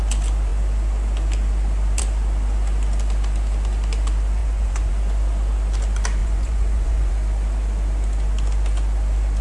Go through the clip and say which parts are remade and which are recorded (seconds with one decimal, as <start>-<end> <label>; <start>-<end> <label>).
0.0-4.4 recorded; 4.4-4.9 remade; 4.9-6.2 recorded; 6.2-7.1 remade; 7.1-9.4 recorded